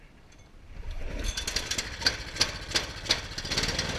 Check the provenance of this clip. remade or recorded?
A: recorded